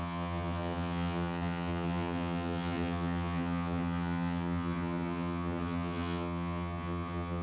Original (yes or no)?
no